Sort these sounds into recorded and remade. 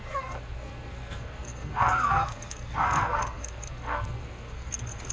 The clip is remade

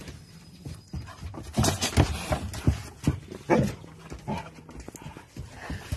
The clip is recorded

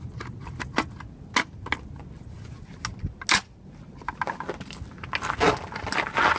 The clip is recorded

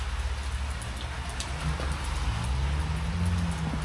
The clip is recorded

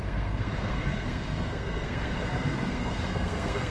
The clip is remade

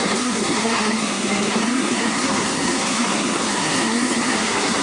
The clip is remade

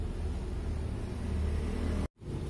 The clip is recorded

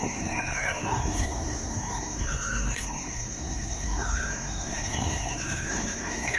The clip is remade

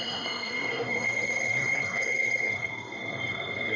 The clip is remade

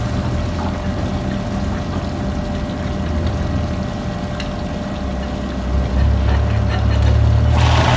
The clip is recorded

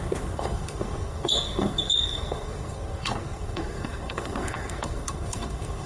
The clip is remade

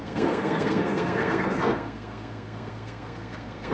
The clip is remade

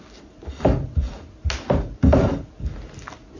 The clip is recorded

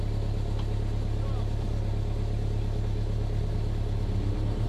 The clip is recorded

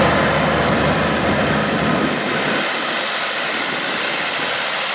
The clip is recorded